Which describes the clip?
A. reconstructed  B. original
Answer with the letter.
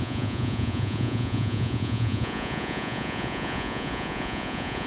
A